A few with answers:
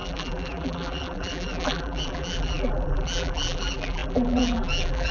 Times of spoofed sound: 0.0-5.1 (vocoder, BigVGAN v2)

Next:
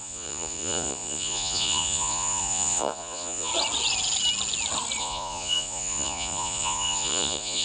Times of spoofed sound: 0.0-3.5 (vocoder, Vocos); 5.0-7.6

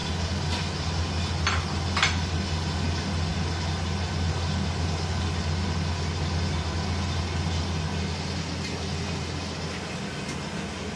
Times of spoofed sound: none

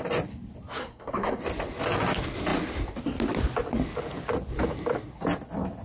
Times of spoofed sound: 0.8-1.4 (codec, SNAC)

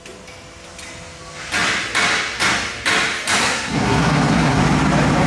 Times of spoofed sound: 3.4-4.6 (codec, SNAC)

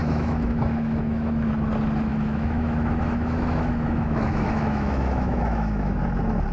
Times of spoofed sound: 0.0-1.5 (autoencoder, DAC-VAE); 2.1-6.0

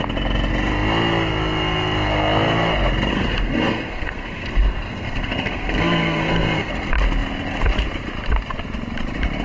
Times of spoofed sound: 3.1-6.7 (codec, SNAC)